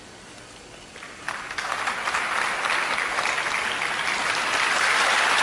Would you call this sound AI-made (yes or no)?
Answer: no